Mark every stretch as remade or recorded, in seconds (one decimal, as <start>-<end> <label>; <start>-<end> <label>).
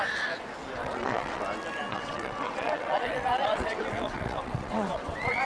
0.0-0.8 recorded; 0.8-1.4 remade; 1.4-1.9 recorded; 1.9-5.4 remade